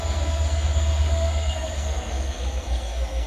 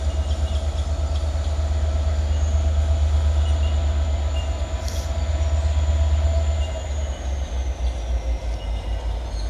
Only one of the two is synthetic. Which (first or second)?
first